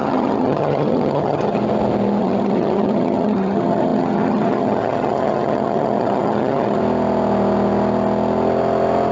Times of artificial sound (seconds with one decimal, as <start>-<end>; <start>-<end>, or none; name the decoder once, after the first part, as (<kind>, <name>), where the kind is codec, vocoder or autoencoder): 0.0-1.6 (vocoder, HiFi-GAN); 2.2-6.8